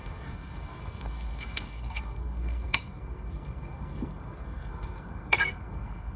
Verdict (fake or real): fake